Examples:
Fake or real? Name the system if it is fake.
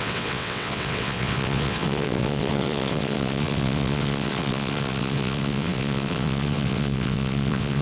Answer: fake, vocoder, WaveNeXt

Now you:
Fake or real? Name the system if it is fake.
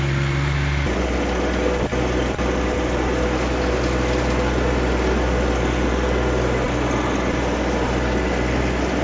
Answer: real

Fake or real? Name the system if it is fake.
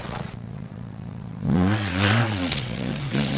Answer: fake, vocoder, WaveNeXt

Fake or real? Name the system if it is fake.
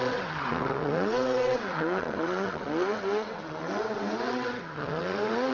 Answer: fake, vocoder, WaveNeXt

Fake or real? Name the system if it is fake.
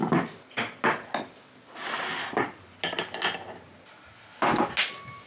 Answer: real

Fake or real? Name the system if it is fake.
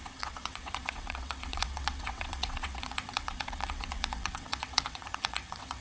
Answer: fake, vocoder, WaveNeXt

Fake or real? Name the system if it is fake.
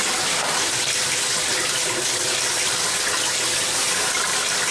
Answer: real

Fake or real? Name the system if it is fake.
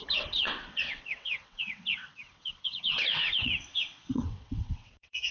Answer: fake, vocoder, WaveNeXt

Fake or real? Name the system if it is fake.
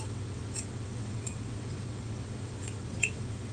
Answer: fake, vocoder, WaveNeXt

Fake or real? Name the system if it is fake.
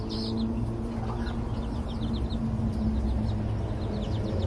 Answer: real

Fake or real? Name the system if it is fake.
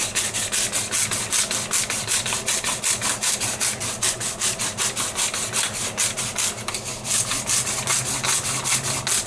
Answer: real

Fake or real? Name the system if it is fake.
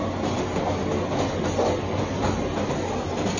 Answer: real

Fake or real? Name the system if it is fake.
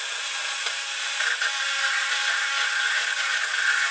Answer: real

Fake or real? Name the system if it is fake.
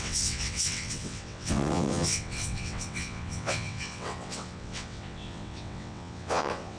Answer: fake, vocoder, WaveNeXt